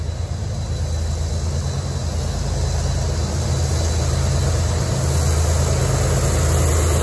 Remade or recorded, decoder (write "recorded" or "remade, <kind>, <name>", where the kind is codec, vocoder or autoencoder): recorded